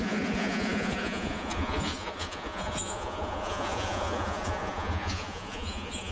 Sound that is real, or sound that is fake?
fake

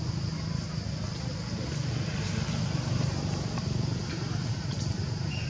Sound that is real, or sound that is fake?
fake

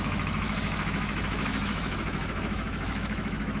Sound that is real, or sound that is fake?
fake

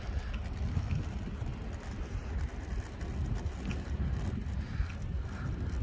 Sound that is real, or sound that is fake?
real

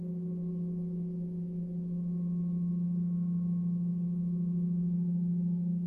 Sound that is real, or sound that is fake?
real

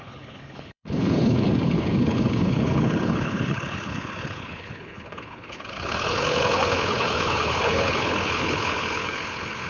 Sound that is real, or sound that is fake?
fake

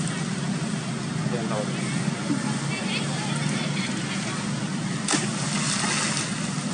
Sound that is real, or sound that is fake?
real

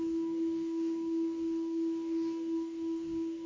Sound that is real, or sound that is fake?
fake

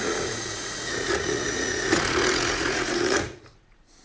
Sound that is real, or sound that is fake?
fake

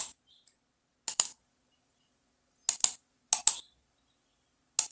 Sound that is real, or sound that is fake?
real